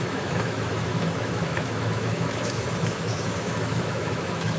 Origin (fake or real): fake